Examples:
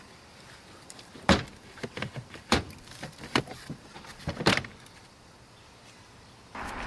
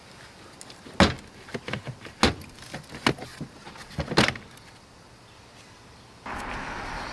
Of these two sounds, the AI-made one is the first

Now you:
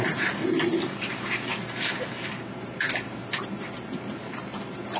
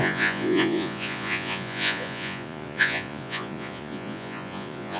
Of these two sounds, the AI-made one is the second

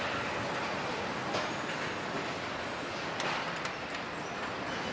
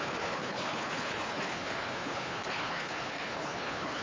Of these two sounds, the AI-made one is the second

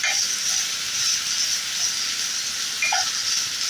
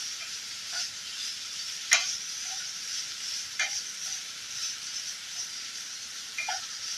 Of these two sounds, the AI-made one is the second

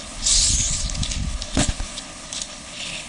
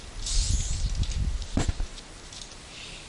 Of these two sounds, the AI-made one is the first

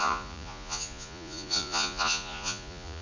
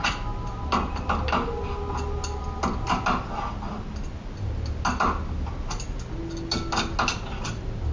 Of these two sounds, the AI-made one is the first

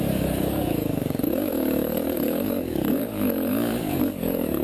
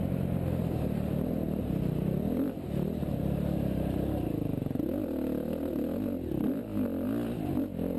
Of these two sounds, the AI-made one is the first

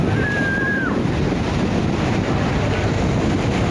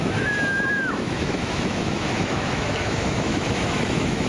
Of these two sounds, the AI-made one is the second